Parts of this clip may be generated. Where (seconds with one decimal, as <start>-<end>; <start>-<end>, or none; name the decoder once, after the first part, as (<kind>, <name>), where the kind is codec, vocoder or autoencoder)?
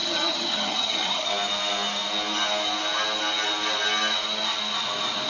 0.0-1.3 (vocoder, HiFi-GAN)